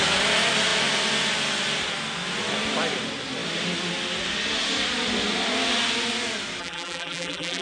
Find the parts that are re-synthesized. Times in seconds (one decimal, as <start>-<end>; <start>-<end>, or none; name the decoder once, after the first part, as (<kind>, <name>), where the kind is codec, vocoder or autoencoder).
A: 6.6-7.6 (vocoder, BigVGAN v2)